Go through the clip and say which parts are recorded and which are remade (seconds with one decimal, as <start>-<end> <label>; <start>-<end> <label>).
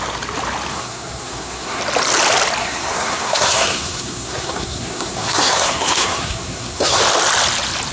0.0-0.7 recorded; 0.7-1.8 remade; 1.8-2.6 recorded; 2.6-7.0 remade; 7.0-7.9 recorded